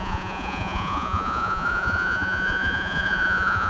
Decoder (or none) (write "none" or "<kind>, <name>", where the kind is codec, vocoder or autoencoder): vocoder, Vocos